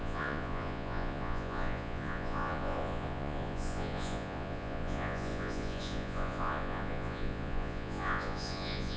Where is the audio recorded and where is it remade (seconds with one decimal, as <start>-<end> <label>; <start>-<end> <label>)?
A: 0.0-9.0 remade